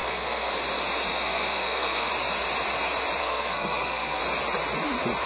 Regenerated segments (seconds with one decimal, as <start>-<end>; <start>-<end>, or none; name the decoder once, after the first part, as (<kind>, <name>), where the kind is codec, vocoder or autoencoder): 0.0-0.5 (codec, SNAC); 1.1-2.1; 3.2-4.2